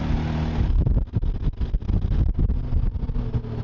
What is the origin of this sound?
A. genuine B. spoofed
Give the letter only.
A